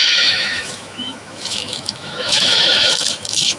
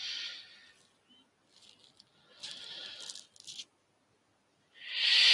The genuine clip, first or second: second